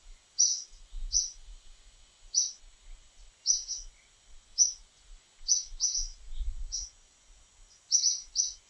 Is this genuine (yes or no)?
no